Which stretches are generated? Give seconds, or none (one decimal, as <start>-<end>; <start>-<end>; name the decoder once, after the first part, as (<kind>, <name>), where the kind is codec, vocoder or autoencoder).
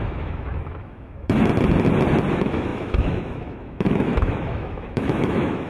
0.0-1.5 (autoencoder, DAC-VAE); 2.3-5.7